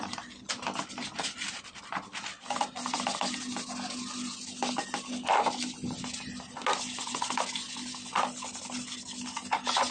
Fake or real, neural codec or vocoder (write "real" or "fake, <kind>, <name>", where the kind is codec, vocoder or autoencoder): real